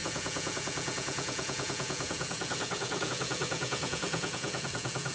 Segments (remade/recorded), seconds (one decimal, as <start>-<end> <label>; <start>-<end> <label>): 0.0-5.1 remade